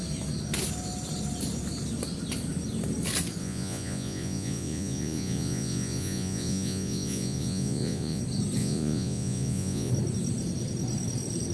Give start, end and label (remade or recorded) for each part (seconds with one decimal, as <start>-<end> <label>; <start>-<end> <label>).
0.0-3.4 recorded; 3.4-8.2 remade; 8.2-8.6 recorded; 8.6-9.9 remade; 9.9-11.5 recorded